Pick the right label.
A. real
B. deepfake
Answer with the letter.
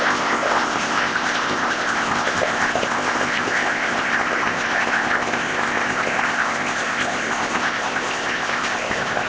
B